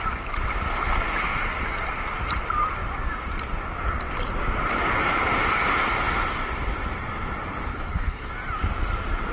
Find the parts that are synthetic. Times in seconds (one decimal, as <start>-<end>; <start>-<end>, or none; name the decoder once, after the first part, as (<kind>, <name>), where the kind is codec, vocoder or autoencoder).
7.7-8.3 (codec, HILCodec)